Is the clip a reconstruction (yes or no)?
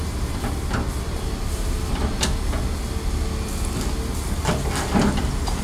no